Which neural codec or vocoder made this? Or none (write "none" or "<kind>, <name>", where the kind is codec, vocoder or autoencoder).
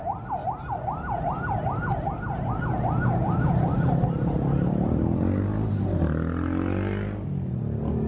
none